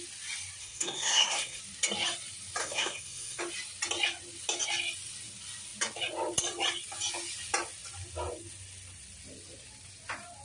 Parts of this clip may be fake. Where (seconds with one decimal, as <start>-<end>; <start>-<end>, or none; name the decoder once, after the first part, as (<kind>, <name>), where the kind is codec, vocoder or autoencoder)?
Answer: 0.6-1.6 (codec, SNAC); 2.6-3.4